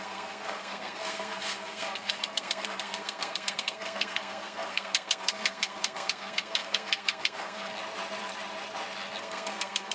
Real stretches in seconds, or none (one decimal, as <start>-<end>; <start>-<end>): 7.7-9.2